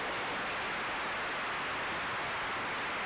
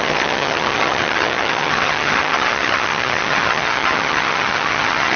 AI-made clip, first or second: second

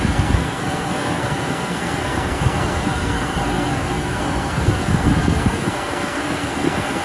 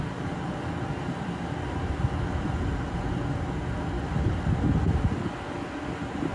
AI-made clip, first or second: first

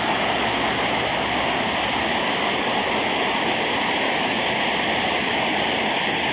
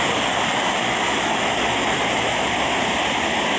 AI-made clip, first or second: second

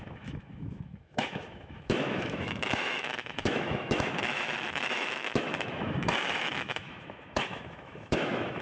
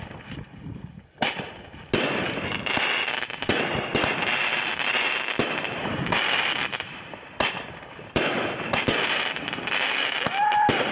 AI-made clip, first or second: first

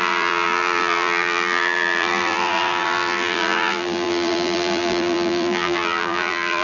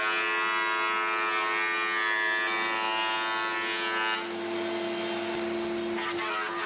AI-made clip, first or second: first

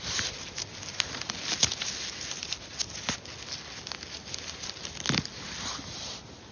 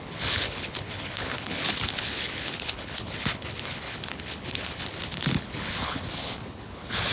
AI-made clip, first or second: second